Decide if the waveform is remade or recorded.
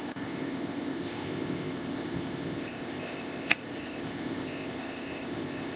remade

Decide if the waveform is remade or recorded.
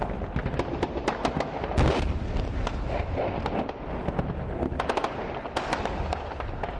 recorded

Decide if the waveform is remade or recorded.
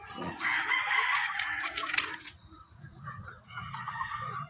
remade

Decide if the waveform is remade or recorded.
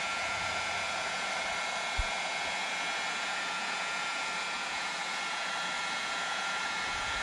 remade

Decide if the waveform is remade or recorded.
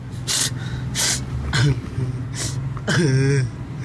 recorded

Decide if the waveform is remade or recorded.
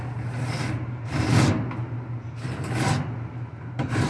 recorded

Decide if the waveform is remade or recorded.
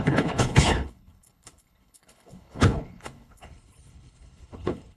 remade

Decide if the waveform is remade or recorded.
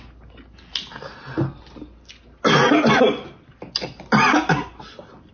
recorded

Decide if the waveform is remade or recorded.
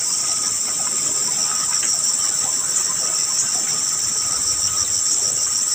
recorded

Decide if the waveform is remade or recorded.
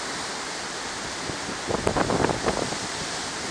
recorded